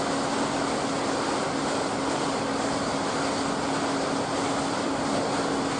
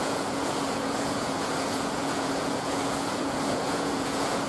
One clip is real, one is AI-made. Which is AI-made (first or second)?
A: second